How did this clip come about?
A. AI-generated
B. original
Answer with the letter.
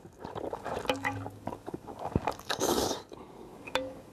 A